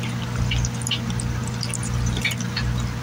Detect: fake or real real